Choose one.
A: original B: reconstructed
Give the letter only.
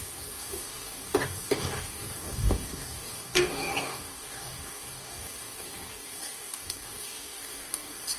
B